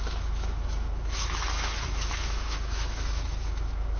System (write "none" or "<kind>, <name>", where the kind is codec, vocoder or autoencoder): autoencoder, DAC-VAE